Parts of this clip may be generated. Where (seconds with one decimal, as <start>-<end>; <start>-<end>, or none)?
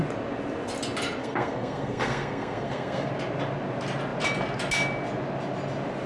1.2-3.1